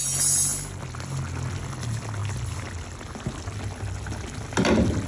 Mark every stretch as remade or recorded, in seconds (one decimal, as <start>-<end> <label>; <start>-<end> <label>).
0.0-5.1 recorded